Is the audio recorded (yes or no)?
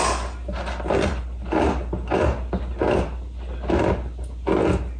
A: yes